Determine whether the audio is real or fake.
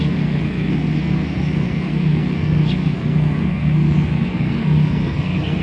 fake